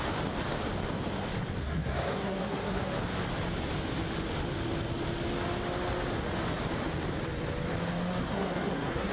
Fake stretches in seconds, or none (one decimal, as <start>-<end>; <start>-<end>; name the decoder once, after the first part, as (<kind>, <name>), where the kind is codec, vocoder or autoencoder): 1.6-2.8 (codec, SNAC); 8.2-9.1